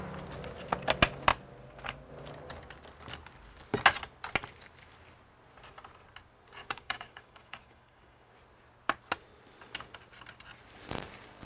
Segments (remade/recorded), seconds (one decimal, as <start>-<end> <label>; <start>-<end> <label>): 0.0-6.6 recorded; 6.6-8.3 remade; 8.3-11.5 recorded